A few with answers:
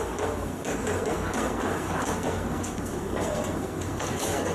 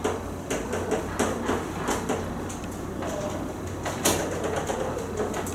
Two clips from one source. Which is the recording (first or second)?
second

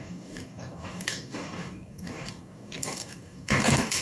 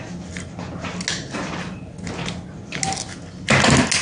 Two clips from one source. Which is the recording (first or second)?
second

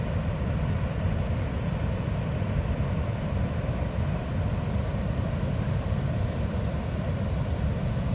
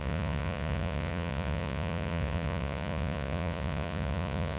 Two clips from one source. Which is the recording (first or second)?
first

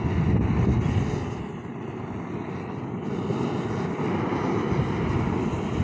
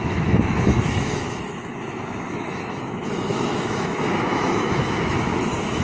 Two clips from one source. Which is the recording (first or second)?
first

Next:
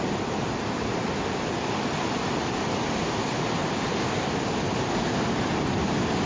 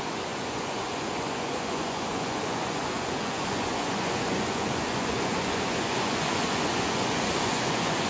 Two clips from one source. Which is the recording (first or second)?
first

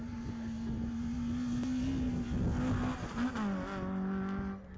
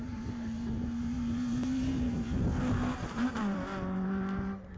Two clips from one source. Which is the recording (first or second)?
first